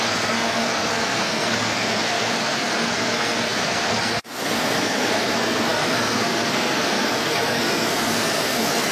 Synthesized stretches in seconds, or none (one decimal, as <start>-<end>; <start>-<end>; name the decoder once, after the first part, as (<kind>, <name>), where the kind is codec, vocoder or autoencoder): 0.0-8.9 (codec, SNAC)